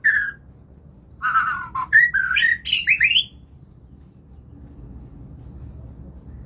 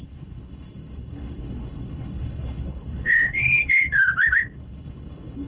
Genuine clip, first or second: first